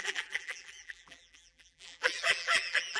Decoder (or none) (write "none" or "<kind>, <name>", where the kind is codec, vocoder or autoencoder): vocoder, BigVGAN v2